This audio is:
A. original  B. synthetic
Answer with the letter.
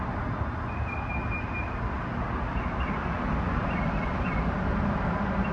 A